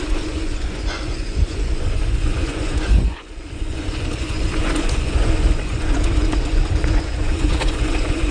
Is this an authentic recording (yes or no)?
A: no